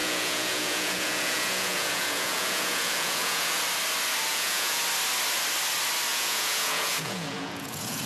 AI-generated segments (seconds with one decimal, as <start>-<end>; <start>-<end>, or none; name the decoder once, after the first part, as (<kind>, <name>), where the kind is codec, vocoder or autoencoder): 0.0-3.6 (vocoder, Vocos); 4.3-4.8; 6.1-8.1

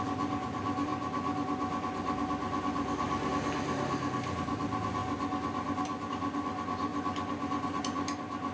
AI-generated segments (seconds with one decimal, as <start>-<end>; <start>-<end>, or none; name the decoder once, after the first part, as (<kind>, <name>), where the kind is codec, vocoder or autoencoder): 6.9-7.8 (vocoder, BigVGAN v2)